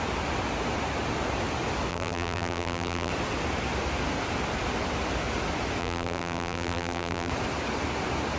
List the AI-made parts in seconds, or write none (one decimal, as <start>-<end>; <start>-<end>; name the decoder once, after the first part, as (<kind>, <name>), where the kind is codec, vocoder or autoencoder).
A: 1.9-3.1 (vocoder, BigVGAN v2); 5.8-7.3